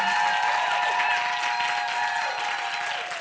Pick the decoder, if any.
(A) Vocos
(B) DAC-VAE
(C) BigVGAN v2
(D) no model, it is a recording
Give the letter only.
D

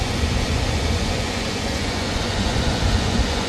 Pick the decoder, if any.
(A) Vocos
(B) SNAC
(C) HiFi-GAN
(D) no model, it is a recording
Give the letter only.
A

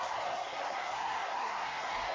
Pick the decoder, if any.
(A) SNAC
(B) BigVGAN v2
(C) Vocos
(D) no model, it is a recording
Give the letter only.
A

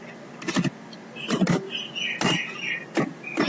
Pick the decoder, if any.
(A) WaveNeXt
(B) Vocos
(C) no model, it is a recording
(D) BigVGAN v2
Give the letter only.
C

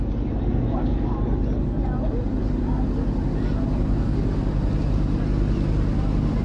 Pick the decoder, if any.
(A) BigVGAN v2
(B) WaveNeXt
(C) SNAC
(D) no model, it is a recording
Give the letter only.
D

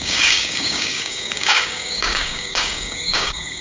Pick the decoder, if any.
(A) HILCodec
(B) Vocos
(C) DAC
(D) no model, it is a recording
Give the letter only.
C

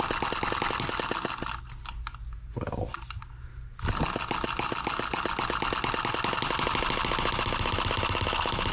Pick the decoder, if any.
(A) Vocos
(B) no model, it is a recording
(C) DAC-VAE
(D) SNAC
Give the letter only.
B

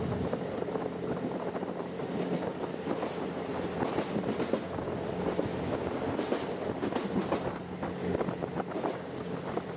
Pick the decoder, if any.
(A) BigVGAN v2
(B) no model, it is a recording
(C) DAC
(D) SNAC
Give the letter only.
B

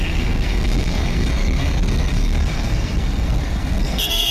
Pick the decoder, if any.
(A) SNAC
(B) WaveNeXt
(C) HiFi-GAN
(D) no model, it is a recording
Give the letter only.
A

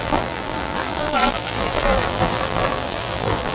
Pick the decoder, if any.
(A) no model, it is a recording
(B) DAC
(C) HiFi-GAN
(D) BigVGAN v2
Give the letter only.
D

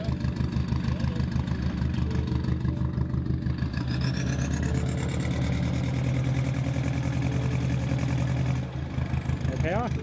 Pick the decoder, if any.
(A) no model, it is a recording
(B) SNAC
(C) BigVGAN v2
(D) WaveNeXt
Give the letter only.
A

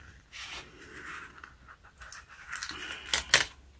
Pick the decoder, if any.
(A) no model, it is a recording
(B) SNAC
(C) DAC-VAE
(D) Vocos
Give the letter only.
A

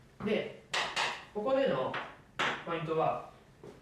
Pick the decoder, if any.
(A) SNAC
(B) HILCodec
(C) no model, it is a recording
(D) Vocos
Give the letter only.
C